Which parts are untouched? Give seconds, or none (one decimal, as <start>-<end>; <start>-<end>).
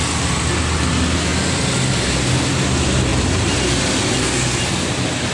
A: 0.0-5.3